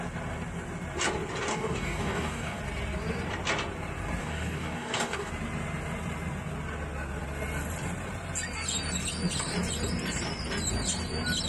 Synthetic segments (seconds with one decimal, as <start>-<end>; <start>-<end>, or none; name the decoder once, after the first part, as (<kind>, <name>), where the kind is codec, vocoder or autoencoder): 1.5-2.6 (codec, DAC); 4.2-5.3

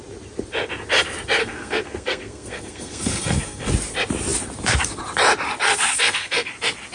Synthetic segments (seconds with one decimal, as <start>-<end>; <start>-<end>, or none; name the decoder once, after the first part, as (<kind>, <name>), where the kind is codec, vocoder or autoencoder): 1.4-3.7 (codec, SNAC); 5.9-6.5

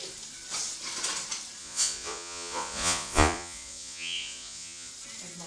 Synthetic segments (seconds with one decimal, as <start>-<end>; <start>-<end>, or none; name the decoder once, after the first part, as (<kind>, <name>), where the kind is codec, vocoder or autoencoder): 1.6-4.9 (vocoder, Vocos)

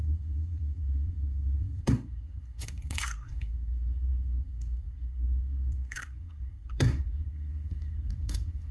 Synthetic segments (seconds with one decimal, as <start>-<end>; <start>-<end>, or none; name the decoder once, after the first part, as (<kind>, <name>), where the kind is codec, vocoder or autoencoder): 0.0-8.7 (codec, SNAC)